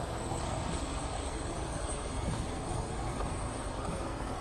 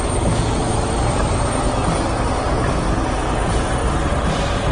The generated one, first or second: first